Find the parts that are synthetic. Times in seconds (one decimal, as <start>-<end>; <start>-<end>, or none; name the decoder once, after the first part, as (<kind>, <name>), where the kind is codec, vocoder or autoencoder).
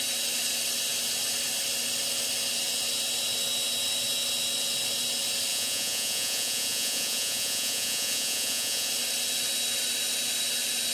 5.5-8.9 (vocoder, Vocos)